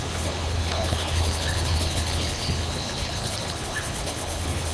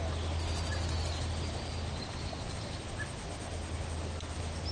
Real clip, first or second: second